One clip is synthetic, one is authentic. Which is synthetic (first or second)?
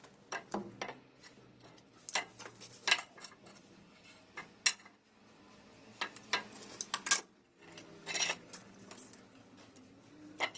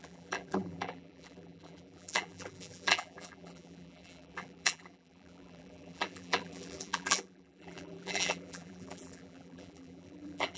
second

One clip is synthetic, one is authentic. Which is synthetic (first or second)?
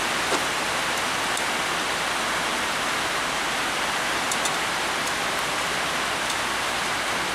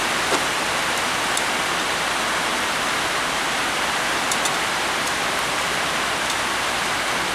second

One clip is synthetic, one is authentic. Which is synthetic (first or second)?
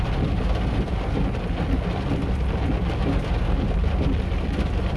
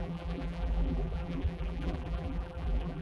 second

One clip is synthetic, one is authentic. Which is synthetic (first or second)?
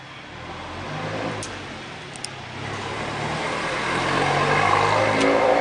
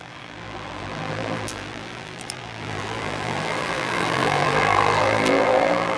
second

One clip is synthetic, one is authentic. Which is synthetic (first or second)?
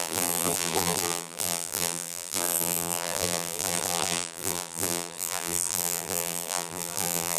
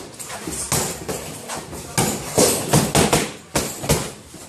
first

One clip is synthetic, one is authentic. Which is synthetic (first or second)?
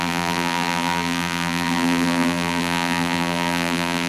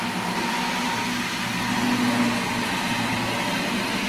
first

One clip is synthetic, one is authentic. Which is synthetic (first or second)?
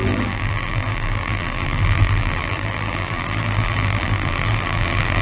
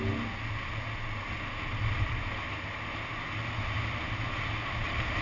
first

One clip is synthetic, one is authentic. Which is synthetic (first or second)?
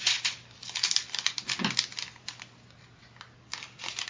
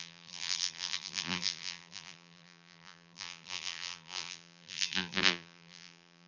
second